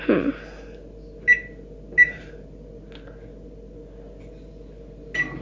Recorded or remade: recorded